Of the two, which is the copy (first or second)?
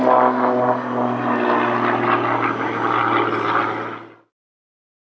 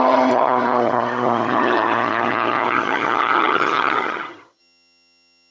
second